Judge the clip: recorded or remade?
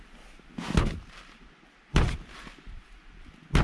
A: recorded